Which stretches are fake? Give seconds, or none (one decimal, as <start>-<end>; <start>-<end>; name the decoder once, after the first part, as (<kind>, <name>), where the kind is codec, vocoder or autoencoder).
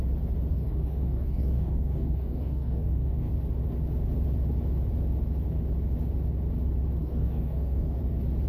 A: 0.5-3.3 (codec, DAC); 7.0-8.0